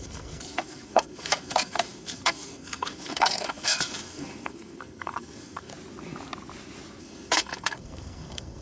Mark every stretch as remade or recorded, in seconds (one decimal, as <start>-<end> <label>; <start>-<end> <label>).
0.0-5.7 remade; 5.7-7.0 recorded; 7.0-8.6 remade